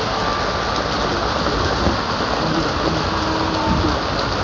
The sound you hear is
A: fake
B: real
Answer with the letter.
B